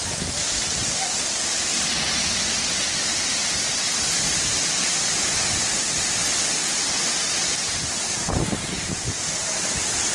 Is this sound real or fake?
real